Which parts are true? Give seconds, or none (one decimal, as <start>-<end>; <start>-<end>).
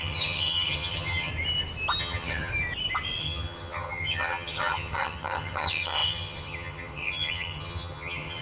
1.3-2.0; 2.5-3.2